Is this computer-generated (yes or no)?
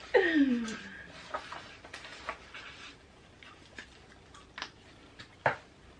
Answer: no